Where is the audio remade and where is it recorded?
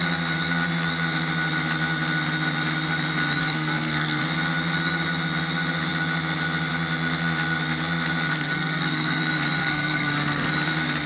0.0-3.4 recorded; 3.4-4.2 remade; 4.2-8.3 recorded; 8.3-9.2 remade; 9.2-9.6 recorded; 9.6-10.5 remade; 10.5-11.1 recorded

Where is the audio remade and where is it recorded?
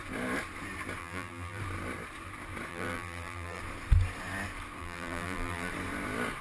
0.0-1.0 recorded; 1.0-1.6 remade; 1.6-2.7 recorded; 2.7-3.6 remade; 3.6-4.8 recorded; 4.8-5.7 remade; 5.7-6.4 recorded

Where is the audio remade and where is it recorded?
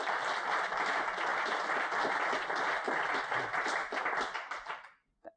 0.0-0.7 remade; 0.7-5.4 recorded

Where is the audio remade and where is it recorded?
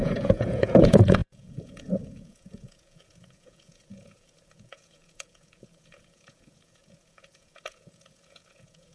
0.0-8.9 remade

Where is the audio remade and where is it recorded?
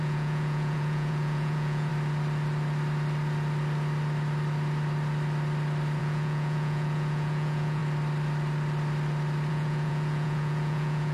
0.0-1.9 remade; 1.9-6.0 recorded; 6.0-7.8 remade; 7.8-9.5 recorded; 9.5-11.1 remade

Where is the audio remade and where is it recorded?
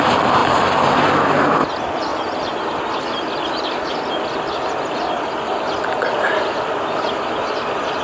0.0-8.0 recorded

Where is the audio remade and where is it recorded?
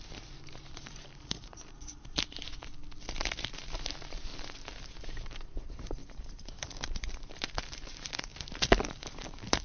0.0-2.4 remade; 2.4-3.1 recorded; 3.1-4.3 remade; 4.3-5.0 recorded; 5.0-8.3 remade; 8.3-8.9 recorded; 8.9-9.6 remade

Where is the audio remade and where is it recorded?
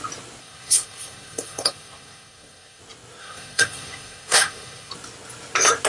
0.0-0.4 recorded; 0.4-2.8 remade; 2.8-3.2 recorded; 3.2-4.9 remade; 4.9-5.9 recorded